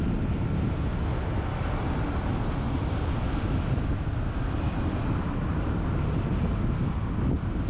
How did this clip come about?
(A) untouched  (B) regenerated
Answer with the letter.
A